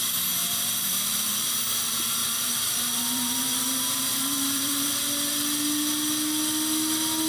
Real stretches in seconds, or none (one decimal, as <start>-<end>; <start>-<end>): 0.0-0.4; 1.3-2.2; 4.9-7.3